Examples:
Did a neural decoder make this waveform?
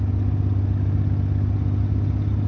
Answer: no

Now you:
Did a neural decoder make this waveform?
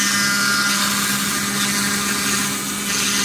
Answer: no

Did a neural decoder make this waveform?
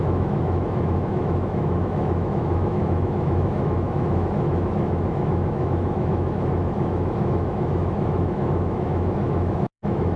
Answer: yes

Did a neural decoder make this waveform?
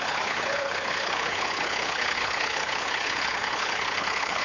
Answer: yes